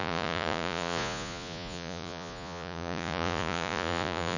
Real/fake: fake